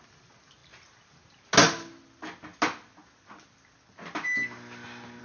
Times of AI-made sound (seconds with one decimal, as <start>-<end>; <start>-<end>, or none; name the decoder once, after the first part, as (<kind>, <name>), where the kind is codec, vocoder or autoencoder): none